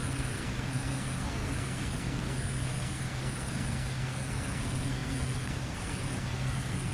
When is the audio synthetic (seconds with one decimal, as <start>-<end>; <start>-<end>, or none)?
0.0-6.9